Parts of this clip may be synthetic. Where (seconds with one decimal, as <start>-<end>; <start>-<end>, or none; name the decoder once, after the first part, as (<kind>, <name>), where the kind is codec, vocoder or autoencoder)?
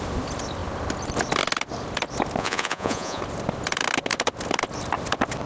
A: 2.4-3.2 (vocoder, Vocos)